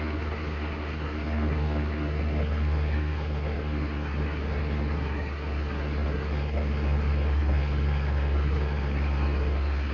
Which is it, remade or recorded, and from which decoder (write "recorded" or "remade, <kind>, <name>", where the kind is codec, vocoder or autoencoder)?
remade, codec, SNAC